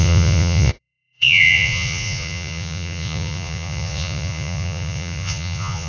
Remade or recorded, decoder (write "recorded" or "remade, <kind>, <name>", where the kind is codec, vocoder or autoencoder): remade, vocoder, Vocos